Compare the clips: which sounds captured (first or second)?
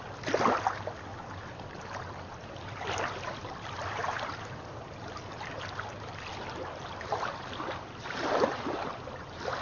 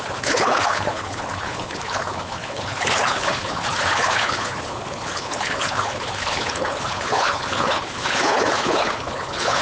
first